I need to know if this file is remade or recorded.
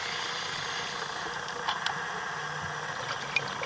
recorded